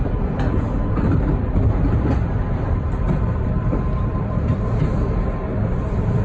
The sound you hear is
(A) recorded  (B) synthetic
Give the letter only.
B